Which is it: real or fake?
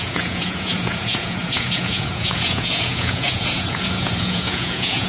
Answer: fake